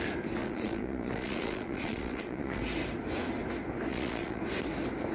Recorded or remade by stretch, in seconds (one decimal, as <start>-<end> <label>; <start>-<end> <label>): 0.0-0.4 recorded; 0.4-2.6 remade; 2.6-3.9 recorded; 3.9-4.4 remade; 4.4-5.1 recorded